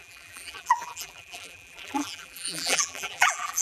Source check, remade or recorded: remade